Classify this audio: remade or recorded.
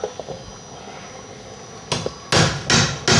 recorded